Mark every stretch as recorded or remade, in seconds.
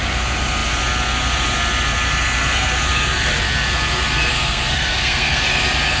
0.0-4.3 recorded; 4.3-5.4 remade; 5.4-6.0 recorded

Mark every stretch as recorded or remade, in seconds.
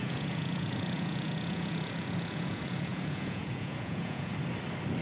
0.0-4.3 remade; 4.3-5.0 recorded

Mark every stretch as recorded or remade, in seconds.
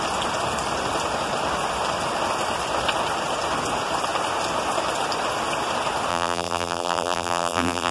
0.0-6.1 recorded; 6.1-7.9 remade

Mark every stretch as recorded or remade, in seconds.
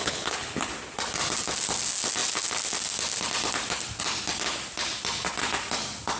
0.0-0.7 remade; 0.7-6.2 recorded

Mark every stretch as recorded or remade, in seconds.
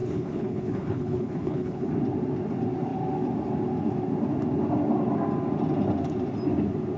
0.0-1.9 remade; 1.9-7.0 recorded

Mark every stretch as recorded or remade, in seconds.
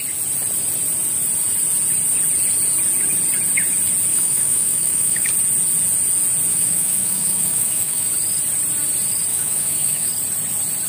0.0-4.1 recorded; 4.1-5.3 remade; 5.3-6.5 recorded; 6.5-8.1 remade; 8.1-9.3 recorded; 9.3-10.1 remade; 10.1-10.9 recorded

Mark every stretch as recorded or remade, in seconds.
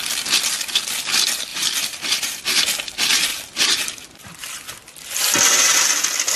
0.0-1.5 recorded; 1.5-2.4 remade; 2.4-3.3 recorded; 3.3-4.6 remade; 4.6-6.4 recorded